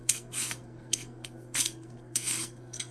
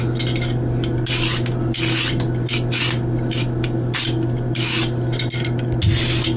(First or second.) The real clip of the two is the second